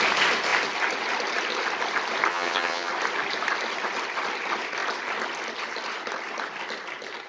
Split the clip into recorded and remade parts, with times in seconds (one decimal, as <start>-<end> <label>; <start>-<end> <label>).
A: 0.0-2.3 recorded; 2.3-2.9 remade; 2.9-7.3 recorded